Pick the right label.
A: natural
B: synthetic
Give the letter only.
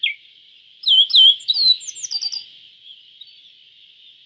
A